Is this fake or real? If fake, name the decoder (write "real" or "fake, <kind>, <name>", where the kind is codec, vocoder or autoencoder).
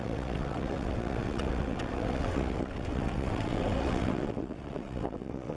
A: fake, vocoder, WaveNeXt